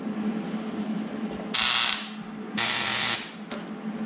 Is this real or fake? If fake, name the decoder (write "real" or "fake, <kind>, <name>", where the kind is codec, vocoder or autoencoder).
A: real